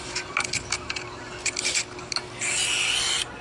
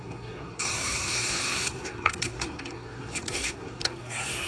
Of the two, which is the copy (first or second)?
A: second